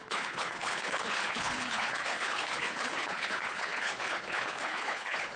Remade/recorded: remade